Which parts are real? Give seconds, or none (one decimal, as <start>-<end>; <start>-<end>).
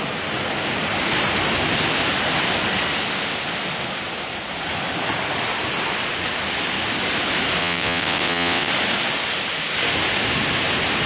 0.0-7.6; 8.7-11.1